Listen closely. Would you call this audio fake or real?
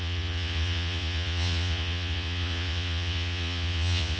fake